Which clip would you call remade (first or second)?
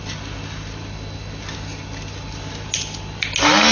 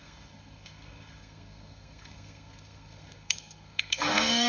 second